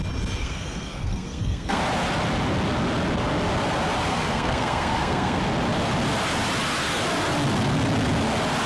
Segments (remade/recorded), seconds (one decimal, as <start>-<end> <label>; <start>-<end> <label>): 0.0-0.4 recorded; 0.4-1.8 remade; 1.8-4.1 recorded; 4.1-5.4 remade; 5.4-8.7 recorded